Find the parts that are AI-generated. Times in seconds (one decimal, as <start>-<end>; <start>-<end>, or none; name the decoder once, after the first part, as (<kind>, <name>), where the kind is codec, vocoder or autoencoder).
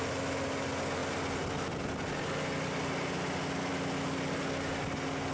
none